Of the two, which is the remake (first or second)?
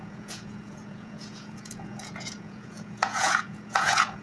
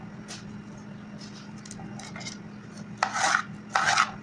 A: first